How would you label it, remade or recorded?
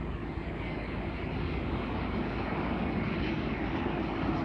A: remade